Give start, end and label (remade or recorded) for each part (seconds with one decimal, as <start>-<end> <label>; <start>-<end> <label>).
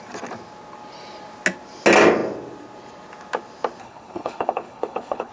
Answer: 0.0-3.8 recorded; 3.8-5.3 remade